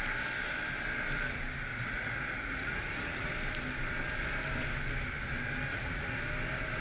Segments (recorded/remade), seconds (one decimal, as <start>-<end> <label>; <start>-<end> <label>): 0.0-1.7 recorded; 1.7-3.3 remade; 3.3-5.7 recorded; 5.7-6.2 remade; 6.2-6.8 recorded